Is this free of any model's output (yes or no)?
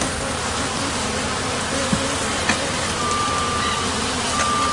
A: yes